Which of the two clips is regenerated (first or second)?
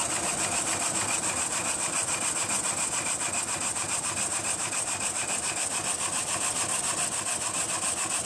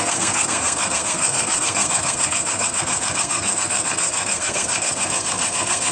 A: second